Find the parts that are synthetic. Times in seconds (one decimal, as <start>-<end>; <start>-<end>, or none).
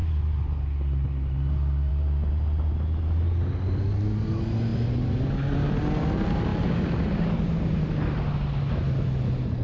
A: none